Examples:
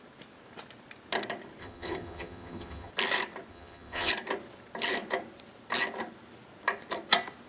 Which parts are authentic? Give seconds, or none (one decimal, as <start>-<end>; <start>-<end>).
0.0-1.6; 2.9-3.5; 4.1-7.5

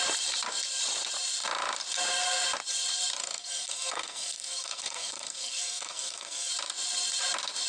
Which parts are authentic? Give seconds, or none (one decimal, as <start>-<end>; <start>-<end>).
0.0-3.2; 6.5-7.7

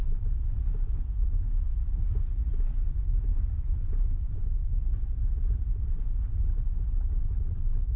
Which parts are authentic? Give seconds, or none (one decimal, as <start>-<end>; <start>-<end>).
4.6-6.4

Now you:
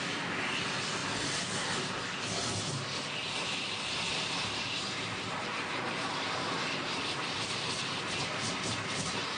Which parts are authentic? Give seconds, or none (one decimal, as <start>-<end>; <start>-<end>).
1.0-2.7

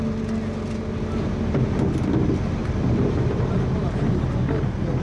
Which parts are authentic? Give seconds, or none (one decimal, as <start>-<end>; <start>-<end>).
0.0-2.6; 4.1-5.0

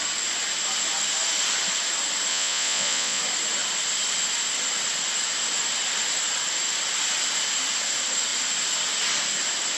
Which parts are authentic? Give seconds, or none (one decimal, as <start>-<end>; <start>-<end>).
0.0-2.3; 3.2-9.8

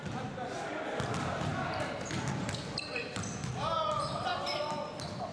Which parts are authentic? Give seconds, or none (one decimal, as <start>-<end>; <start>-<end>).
0.0-5.3